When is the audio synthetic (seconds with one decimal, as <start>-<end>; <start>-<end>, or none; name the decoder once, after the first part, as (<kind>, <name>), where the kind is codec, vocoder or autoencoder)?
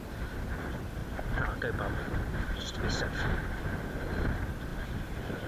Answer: none